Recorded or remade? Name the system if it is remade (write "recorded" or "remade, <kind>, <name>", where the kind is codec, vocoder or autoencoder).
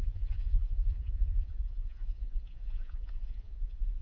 remade, vocoder, Vocos